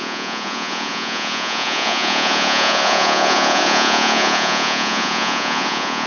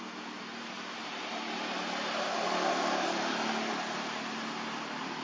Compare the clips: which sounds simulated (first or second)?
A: first